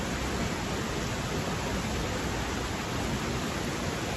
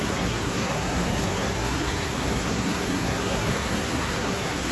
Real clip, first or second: first